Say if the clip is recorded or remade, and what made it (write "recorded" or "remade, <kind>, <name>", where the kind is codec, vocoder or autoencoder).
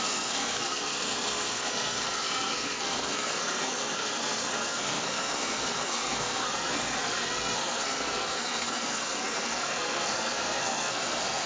remade, codec, SNAC